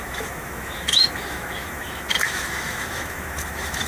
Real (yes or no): no